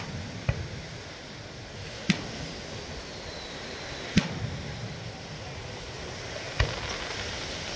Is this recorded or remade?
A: recorded